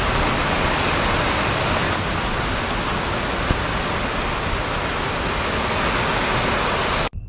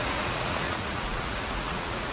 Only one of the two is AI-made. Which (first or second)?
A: second